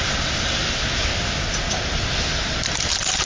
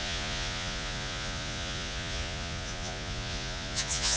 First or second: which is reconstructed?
second